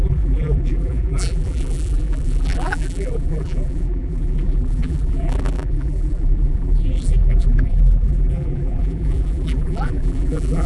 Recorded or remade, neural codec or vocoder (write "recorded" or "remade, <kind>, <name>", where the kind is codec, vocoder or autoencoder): remade, vocoder, BigVGAN v2